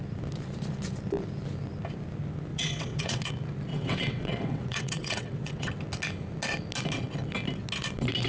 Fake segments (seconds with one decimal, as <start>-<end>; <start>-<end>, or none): 2.5-3.3; 3.7-5.7